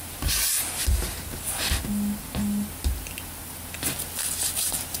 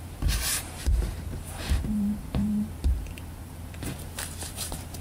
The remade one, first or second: second